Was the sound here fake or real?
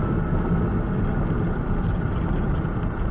real